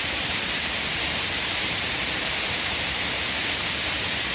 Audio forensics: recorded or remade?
remade